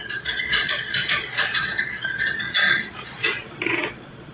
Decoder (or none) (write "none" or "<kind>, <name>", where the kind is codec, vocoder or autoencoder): vocoder, Vocos